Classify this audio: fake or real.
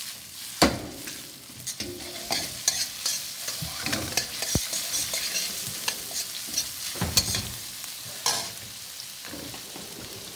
real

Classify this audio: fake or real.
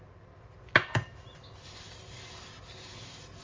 real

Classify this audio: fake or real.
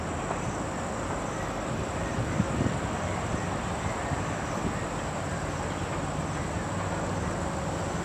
real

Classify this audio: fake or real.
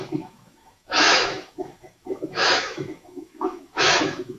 fake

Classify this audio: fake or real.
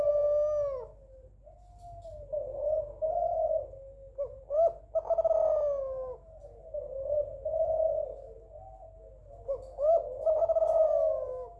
real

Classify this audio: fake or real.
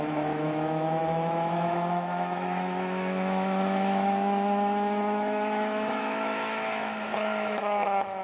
fake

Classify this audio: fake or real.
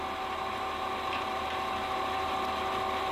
real